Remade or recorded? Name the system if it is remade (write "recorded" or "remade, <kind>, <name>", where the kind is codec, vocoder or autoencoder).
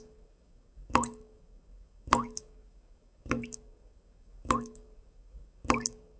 remade, codec, DAC